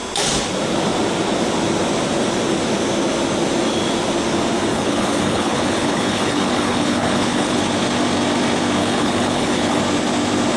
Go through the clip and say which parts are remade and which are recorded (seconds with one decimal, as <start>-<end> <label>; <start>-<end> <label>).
0.0-4.7 recorded; 4.7-7.6 remade; 7.6-8.8 recorded; 8.8-9.8 remade; 9.8-10.6 recorded